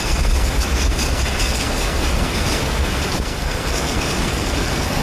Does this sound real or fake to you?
fake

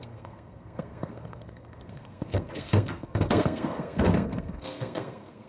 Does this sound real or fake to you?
fake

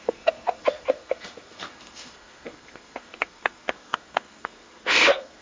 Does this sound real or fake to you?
fake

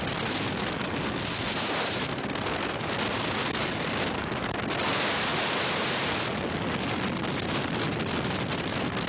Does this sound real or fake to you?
real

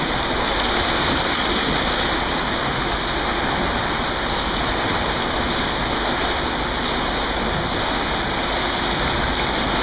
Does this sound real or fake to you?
real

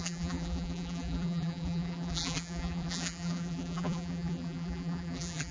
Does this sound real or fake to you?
fake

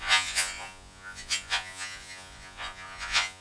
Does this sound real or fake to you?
fake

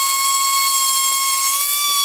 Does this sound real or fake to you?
real